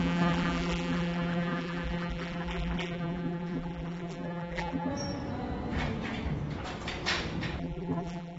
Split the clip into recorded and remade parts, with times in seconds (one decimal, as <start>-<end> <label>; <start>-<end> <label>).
0.0-4.9 remade; 4.9-7.6 recorded; 7.6-8.4 remade